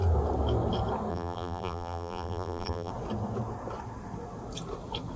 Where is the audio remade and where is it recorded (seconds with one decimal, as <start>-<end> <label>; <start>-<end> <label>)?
0.0-1.1 recorded; 1.1-2.9 remade; 2.9-5.2 recorded